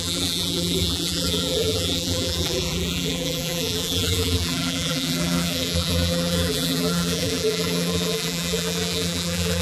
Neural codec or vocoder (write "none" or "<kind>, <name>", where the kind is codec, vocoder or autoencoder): vocoder, BigVGAN v2